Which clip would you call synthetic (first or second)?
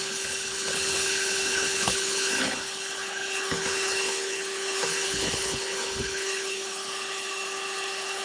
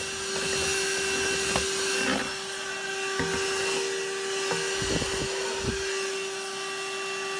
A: first